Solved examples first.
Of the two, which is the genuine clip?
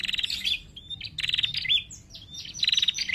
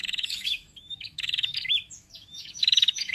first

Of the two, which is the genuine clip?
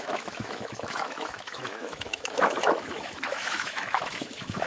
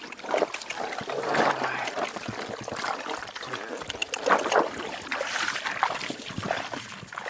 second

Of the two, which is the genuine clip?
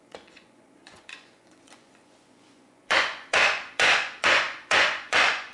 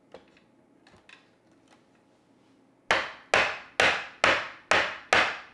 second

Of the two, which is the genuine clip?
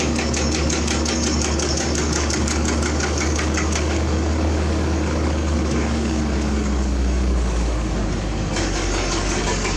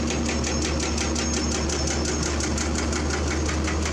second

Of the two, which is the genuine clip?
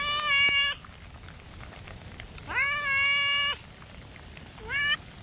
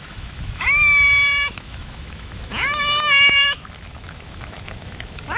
first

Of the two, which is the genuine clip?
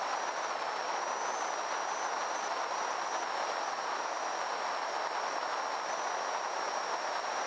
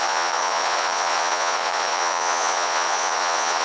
first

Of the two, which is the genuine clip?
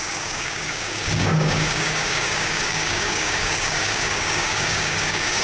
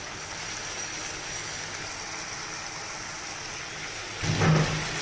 second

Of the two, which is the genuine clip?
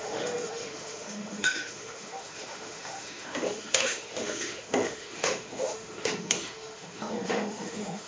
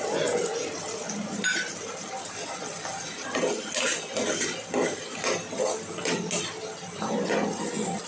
second